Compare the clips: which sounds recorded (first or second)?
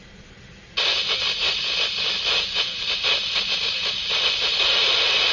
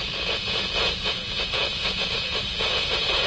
first